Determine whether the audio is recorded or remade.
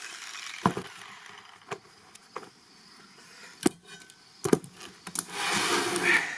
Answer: recorded